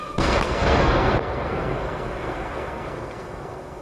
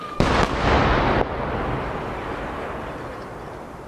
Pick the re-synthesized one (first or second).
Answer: first